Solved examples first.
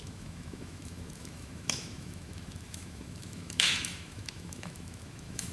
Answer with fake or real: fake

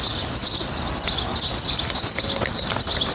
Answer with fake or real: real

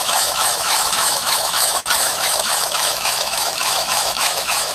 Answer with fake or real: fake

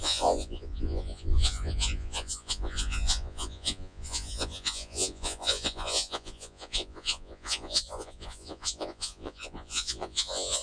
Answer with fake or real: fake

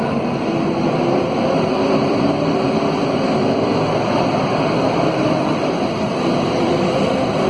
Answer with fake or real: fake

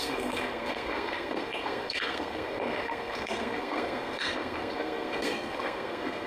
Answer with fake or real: fake